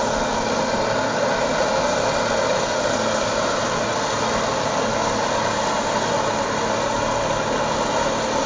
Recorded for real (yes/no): yes